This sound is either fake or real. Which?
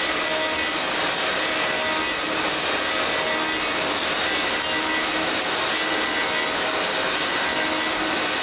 real